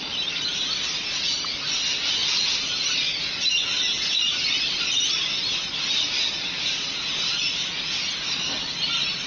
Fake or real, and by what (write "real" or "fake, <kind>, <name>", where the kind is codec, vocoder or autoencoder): real